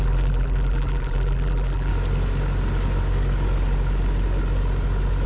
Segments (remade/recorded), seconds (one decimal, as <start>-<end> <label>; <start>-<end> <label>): 0.0-1.9 remade; 1.9-5.3 recorded